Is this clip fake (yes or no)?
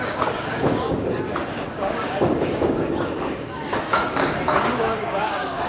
yes